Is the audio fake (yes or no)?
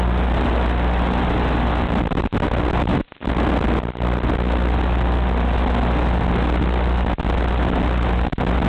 no